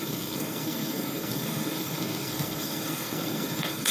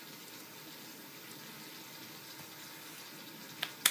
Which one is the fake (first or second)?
first